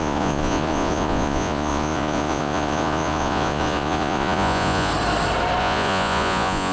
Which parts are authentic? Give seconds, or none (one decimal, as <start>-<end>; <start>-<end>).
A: 4.9-5.6

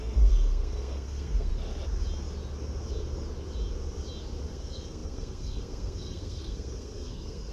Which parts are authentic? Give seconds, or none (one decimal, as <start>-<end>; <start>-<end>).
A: 1.5-4.5

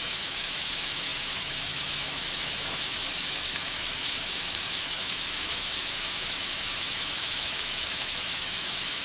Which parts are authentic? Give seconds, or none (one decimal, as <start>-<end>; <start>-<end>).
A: none

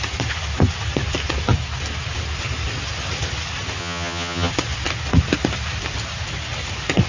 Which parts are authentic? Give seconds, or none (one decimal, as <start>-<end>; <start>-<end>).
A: 0.0-3.8; 4.5-7.1

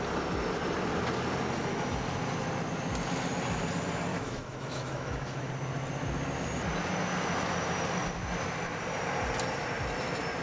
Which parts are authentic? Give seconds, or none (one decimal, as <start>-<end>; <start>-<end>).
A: 0.0-4.1; 5.5-10.4